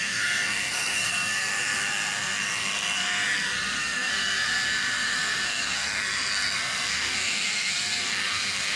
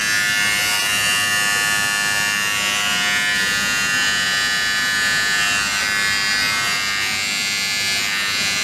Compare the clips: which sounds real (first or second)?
second